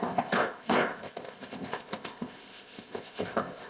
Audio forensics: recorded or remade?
remade